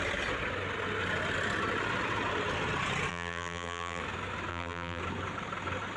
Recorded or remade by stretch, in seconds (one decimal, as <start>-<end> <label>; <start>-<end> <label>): 0.0-3.1 recorded; 3.1-4.0 remade; 4.0-4.5 recorded; 4.5-5.0 remade; 5.0-6.0 recorded